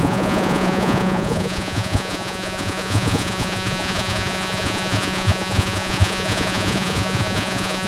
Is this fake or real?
fake